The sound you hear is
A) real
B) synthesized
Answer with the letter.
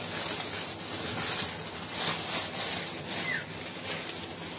A